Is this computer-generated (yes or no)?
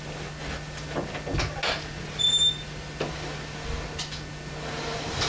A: no